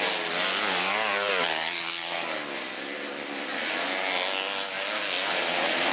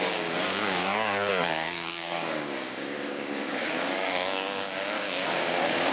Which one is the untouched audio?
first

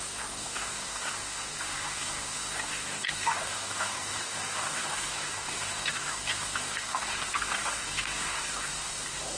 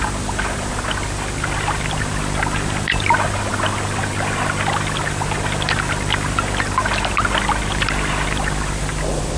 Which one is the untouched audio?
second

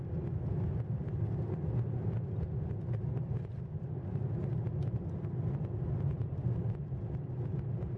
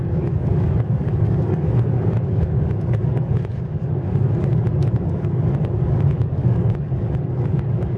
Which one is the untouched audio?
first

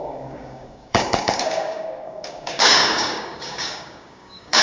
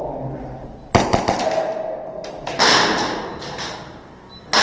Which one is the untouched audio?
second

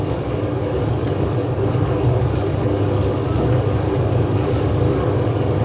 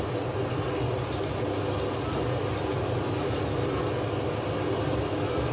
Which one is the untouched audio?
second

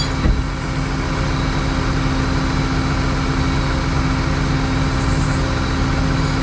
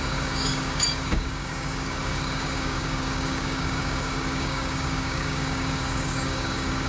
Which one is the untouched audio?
first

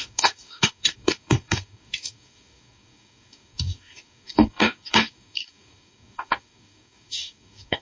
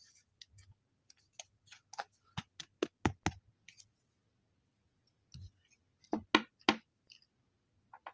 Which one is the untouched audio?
second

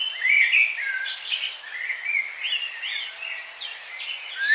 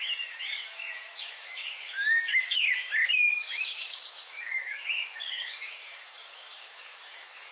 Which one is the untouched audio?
first